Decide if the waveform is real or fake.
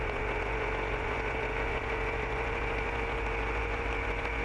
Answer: fake